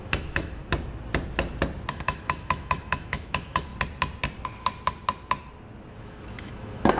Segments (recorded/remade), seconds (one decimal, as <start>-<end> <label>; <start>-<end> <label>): 0.0-0.6 remade; 0.6-1.9 recorded; 1.9-3.7 remade; 3.7-6.0 recorded; 6.0-7.0 remade